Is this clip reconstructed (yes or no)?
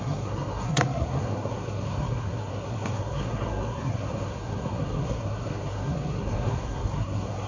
yes